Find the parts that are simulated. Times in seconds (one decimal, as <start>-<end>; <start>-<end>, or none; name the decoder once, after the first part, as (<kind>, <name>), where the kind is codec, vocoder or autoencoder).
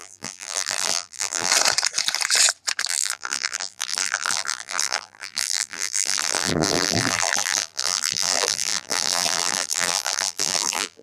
0.0-1.5 (vocoder, BigVGAN v2); 2.9-11.0